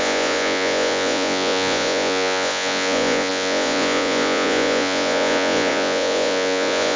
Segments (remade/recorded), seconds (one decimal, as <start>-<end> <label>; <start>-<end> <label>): 0.0-7.0 remade